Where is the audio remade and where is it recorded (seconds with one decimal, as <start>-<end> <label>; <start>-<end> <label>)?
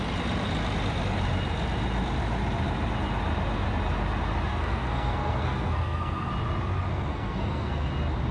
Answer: 0.0-4.5 recorded; 4.5-6.3 remade; 6.3-6.9 recorded; 6.9-7.9 remade; 7.9-8.3 recorded